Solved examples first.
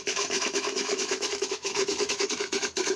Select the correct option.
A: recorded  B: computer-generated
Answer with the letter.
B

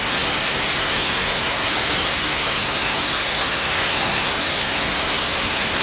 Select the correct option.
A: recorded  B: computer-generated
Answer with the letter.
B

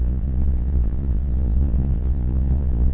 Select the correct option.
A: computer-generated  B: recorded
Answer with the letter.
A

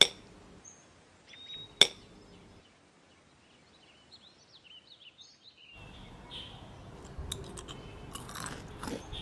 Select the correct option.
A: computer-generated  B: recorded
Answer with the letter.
B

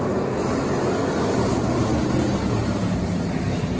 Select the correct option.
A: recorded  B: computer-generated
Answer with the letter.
A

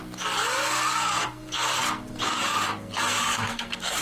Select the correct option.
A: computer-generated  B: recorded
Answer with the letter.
A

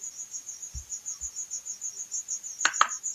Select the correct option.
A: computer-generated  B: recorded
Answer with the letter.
B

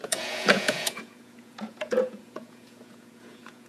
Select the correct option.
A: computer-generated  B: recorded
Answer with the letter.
A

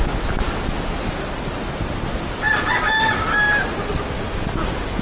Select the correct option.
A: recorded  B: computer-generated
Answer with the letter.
A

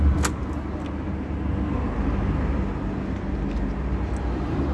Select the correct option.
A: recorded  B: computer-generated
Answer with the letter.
A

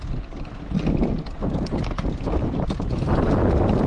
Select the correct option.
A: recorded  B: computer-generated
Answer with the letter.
A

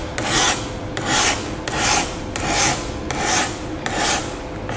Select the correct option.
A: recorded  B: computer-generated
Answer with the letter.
A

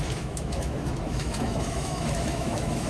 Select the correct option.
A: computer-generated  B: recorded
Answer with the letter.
A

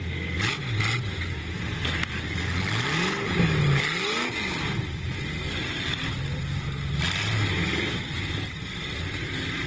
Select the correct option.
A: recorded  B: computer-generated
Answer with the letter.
A